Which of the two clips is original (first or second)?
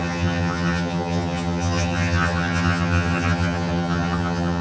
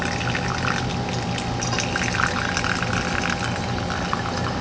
second